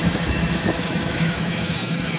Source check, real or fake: fake